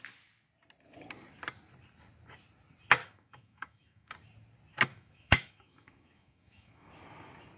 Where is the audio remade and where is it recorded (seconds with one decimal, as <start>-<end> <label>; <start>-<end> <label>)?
0.0-3.0 recorded; 3.0-4.1 remade; 4.1-4.9 recorded; 4.9-6.9 remade; 6.9-7.6 recorded